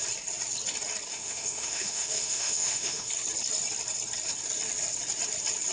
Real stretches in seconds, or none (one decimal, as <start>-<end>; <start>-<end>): 0.0-1.1; 3.1-5.7